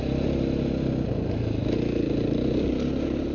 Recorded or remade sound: recorded